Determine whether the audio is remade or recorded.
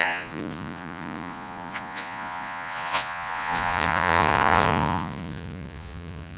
remade